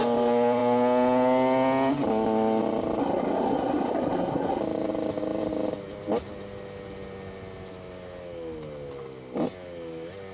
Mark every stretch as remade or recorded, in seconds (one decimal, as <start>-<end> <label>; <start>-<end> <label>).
0.0-3.0 recorded; 3.0-4.6 remade; 4.6-10.3 recorded